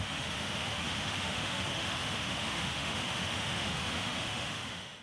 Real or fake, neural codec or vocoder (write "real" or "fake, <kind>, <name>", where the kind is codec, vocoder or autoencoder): fake, autoencoder, DAC-VAE